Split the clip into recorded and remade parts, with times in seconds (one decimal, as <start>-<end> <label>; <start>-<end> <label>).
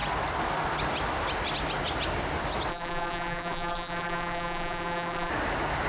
0.0-2.7 recorded; 2.7-5.3 remade; 5.3-5.9 recorded